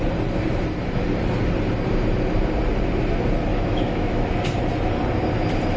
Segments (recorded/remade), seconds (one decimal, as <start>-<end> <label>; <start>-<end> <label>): 0.0-3.5 recorded; 3.5-4.3 remade; 4.3-5.8 recorded